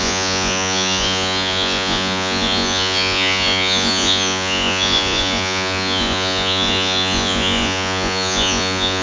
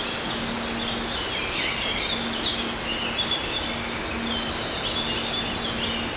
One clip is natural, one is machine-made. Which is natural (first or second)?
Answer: second